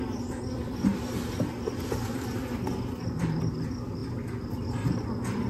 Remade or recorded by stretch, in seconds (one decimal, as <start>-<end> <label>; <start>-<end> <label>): 0.0-5.5 recorded

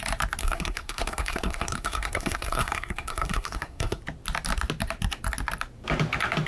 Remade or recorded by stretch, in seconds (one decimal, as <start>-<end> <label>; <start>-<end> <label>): 0.0-0.4 recorded; 0.4-4.0 remade; 4.0-6.5 recorded